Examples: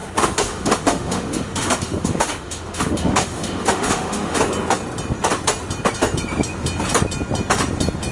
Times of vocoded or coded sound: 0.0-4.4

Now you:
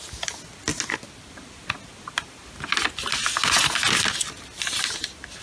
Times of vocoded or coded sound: none

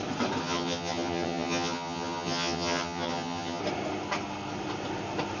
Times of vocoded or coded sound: 0.4-3.6

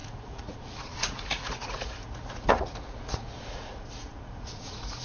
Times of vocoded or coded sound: 0.0-5.0

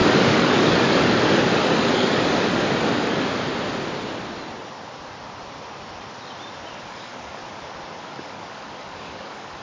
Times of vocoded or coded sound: 0.0-3.5; 6.9-7.4; 8.0-9.6

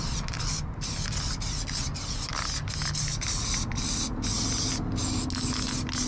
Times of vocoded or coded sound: none

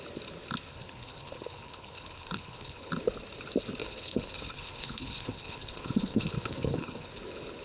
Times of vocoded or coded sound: 0.7-2.9; 3.8-7.1

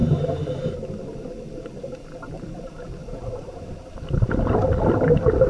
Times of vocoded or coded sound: none